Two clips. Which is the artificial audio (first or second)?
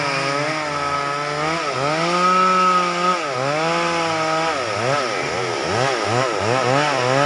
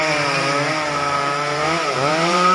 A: second